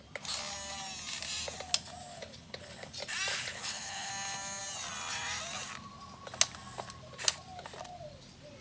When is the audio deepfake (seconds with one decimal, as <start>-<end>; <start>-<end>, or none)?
2.1-2.9; 3.3-4.1